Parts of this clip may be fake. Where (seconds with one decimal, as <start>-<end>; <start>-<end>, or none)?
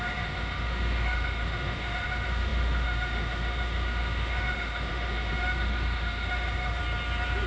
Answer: 0.0-6.8